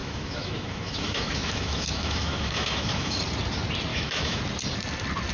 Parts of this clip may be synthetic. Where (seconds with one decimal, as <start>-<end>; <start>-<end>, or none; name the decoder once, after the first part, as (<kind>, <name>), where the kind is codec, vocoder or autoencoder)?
0.0-3.2 (autoencoder, DAC-VAE); 3.9-4.4